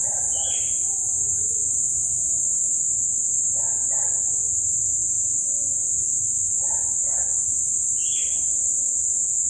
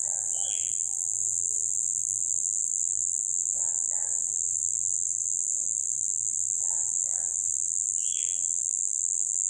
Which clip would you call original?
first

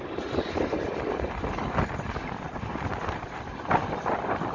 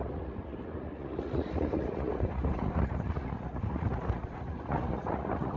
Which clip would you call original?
first